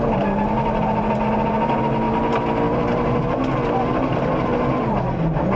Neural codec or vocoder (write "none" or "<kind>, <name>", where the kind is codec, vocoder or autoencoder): none